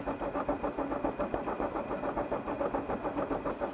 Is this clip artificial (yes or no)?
no